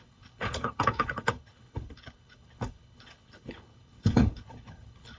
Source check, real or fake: fake